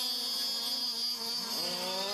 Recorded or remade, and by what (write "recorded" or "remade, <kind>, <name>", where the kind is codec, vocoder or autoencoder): recorded